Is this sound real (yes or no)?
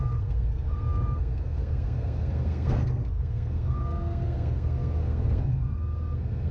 no